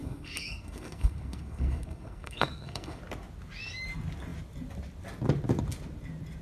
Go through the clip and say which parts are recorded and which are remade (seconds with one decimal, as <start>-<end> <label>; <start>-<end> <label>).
0.0-3.0 remade; 3.0-6.4 recorded